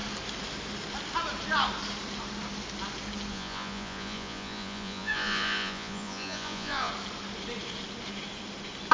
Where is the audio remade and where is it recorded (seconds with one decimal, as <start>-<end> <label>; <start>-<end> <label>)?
0.0-3.3 recorded; 3.3-6.9 remade; 6.9-8.9 recorded